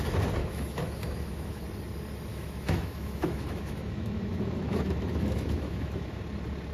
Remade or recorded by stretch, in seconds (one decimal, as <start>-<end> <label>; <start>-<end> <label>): 0.0-0.4 recorded; 0.4-1.6 remade; 1.6-2.3 recorded; 2.3-6.2 remade; 6.2-6.7 recorded